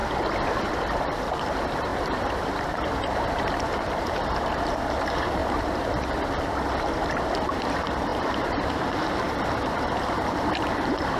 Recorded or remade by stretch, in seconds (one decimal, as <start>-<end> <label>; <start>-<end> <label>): 0.0-0.7 recorded; 0.7-5.4 remade; 5.4-7.5 recorded; 7.5-11.2 remade